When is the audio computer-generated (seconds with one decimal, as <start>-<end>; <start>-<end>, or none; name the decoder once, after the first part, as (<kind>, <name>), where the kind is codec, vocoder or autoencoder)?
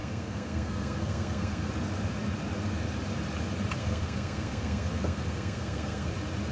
0.0-1.7 (codec, SNAC); 3.8-6.1